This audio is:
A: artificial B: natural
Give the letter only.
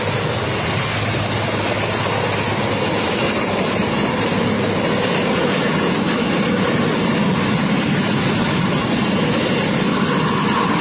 B